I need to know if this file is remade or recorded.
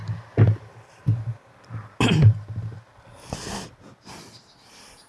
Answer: recorded